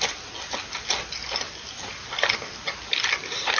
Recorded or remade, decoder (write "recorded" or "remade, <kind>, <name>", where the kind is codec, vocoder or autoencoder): recorded